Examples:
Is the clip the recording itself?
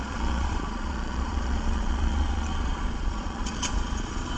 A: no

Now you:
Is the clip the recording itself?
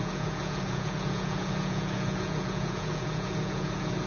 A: no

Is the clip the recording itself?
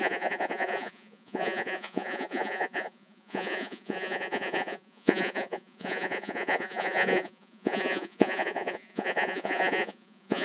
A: no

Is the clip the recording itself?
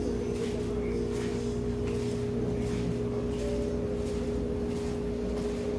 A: yes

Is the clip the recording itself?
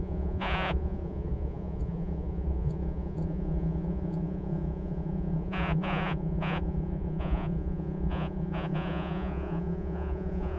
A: no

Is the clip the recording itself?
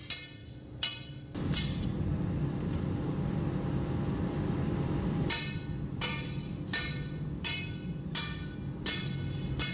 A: yes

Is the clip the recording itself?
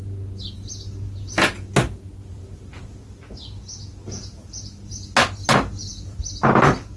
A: yes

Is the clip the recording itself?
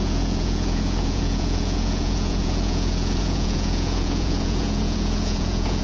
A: no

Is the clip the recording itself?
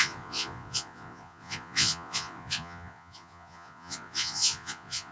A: no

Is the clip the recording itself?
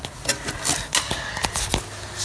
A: yes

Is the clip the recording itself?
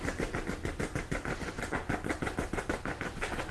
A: yes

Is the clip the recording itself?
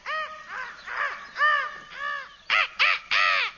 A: yes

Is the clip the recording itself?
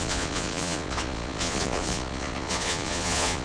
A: no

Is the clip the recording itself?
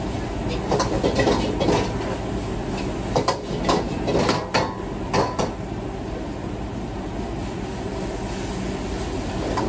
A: yes